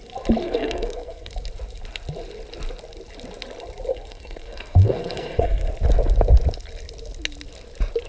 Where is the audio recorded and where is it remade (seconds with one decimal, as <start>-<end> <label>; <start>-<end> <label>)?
0.0-0.4 recorded; 0.4-1.3 remade; 1.3-3.9 recorded; 3.9-5.7 remade; 5.7-8.1 recorded

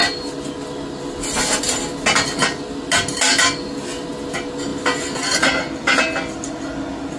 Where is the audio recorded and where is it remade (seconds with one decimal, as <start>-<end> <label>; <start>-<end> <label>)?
0.0-7.2 recorded

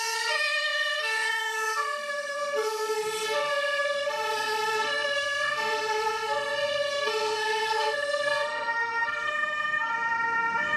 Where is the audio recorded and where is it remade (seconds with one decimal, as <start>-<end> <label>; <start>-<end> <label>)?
0.0-9.9 remade; 9.9-10.8 recorded

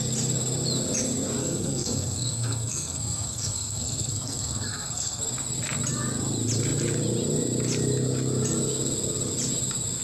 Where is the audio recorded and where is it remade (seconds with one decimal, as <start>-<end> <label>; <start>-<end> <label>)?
0.0-1.4 recorded; 1.4-5.2 remade; 5.2-10.0 recorded

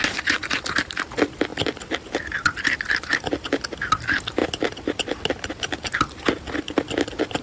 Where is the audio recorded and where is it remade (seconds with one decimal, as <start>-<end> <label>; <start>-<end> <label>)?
0.0-7.4 recorded